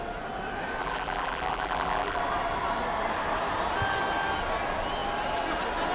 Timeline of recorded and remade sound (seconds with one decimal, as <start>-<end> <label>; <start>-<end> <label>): 0.0-0.8 recorded; 0.8-2.2 remade; 2.2-5.9 recorded